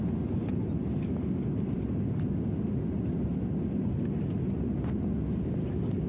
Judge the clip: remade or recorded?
recorded